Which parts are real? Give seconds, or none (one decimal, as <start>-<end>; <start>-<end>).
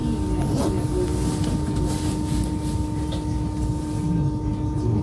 0.0-5.0